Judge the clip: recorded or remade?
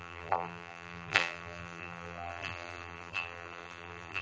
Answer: remade